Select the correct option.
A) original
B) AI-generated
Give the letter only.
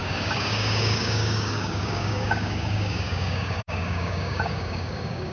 B